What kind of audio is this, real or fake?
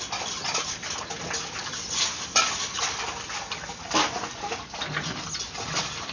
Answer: real